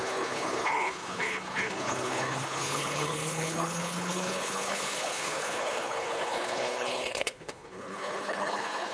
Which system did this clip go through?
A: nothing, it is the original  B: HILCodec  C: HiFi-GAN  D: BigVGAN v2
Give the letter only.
B